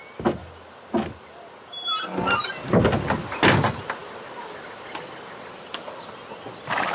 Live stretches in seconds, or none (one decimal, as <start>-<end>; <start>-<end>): 0.0-6.9